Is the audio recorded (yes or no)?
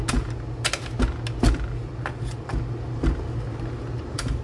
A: yes